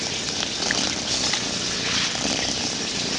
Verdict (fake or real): real